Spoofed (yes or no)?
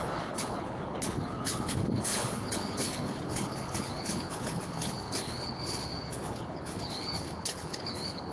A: yes